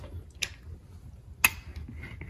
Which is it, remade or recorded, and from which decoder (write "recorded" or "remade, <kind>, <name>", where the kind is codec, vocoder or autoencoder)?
recorded